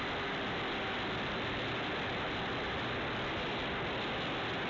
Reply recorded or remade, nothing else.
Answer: recorded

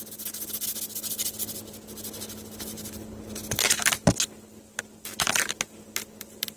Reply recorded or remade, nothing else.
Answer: recorded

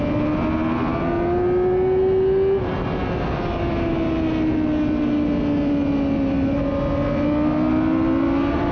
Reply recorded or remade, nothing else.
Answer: recorded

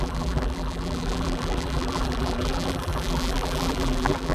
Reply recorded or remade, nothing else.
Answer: remade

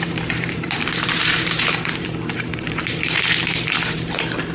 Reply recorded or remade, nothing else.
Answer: remade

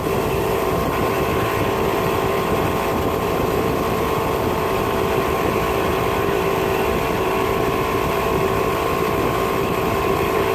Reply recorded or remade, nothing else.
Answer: remade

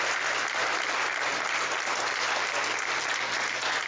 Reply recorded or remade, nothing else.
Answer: recorded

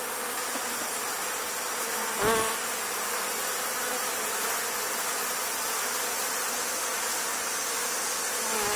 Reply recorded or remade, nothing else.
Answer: recorded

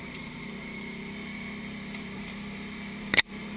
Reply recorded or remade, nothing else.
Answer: remade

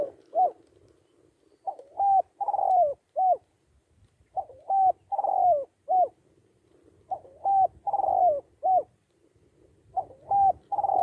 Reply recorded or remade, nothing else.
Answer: recorded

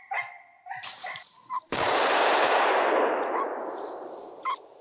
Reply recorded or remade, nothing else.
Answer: remade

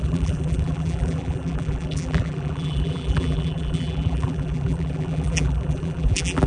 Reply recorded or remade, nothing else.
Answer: remade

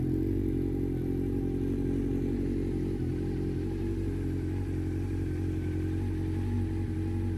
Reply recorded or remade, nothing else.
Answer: recorded